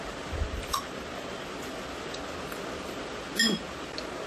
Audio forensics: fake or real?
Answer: real